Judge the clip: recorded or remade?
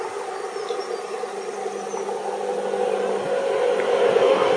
recorded